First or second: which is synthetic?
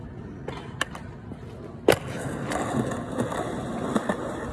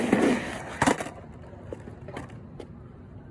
second